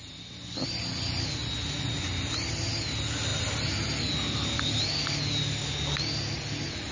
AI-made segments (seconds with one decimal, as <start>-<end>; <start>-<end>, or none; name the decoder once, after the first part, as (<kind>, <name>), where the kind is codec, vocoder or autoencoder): none